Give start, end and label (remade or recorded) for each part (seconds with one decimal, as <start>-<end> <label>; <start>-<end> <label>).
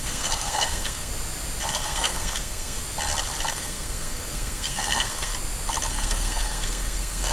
0.0-1.1 remade; 1.1-1.7 recorded; 1.7-2.8 remade; 2.8-3.5 recorded; 3.5-5.3 remade; 5.3-5.9 recorded; 5.9-7.3 remade